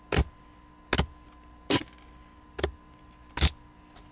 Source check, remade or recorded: recorded